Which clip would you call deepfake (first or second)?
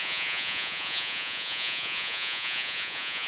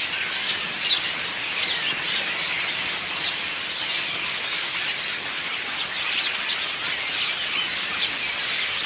first